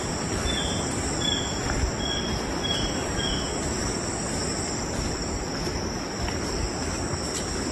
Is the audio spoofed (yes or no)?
no